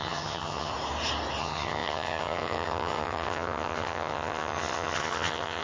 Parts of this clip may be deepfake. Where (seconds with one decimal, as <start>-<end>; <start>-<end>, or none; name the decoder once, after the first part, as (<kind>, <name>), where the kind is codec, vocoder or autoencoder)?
0.0-0.7 (vocoder, HiFi-GAN); 1.4-5.6

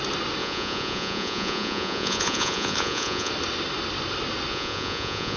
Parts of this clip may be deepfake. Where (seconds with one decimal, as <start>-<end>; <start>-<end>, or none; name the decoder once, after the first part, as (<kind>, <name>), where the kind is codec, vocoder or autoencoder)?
0.4-3.3 (vocoder, Vocos); 4.5-5.4